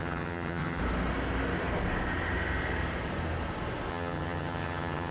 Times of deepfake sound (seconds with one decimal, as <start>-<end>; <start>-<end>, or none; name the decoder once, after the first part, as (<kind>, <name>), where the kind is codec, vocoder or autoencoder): 0.0-0.8 (vocoder, HiFi-GAN); 3.9-5.1

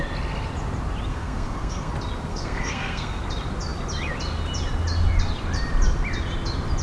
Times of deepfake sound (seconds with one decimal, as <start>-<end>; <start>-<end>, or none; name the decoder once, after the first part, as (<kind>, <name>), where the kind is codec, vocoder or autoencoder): 1.1-1.9 (codec, SNAC); 2.3-3.2

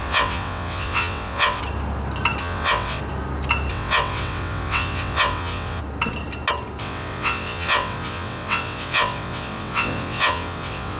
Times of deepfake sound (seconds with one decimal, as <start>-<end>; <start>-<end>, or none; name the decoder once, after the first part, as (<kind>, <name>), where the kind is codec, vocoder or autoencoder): 0.0-1.6 (vocoder, WaveNeXt); 2.4-3.0; 3.7-5.8; 6.8-11.0

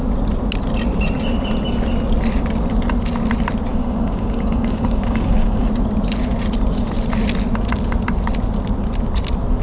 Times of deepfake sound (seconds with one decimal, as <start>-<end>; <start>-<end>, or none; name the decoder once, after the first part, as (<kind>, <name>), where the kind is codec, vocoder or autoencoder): 3.7-5.7 (codec, DAC)

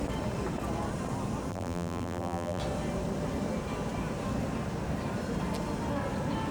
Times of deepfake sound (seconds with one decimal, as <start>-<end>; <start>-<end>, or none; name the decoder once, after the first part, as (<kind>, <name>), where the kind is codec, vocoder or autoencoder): 1.5-2.6 (vocoder, BigVGAN v2)

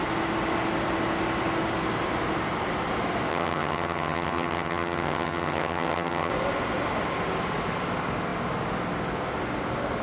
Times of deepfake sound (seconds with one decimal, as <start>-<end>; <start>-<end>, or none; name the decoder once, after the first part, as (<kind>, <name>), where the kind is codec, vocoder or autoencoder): 3.3-6.3 (vocoder, HiFi-GAN)

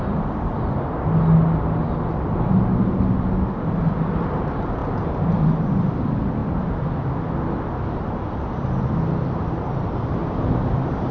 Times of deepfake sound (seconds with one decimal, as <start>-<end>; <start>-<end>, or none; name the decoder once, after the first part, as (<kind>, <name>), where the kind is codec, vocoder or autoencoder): 4.8-5.5 (vocoder, BigVGAN v2); 10.2-11.1